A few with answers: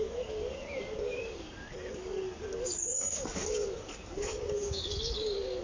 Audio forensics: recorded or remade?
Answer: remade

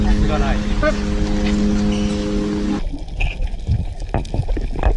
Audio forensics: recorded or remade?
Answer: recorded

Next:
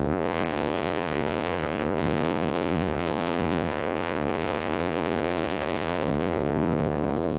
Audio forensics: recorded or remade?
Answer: remade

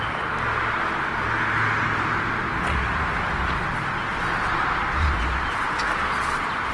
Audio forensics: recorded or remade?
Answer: recorded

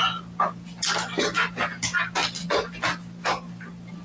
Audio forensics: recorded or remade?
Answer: recorded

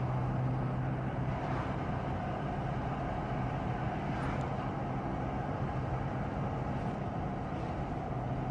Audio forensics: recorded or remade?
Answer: recorded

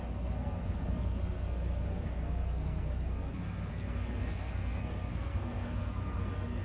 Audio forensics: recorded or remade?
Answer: remade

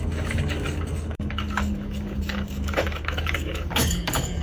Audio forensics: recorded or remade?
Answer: remade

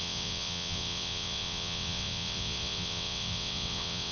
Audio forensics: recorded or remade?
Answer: remade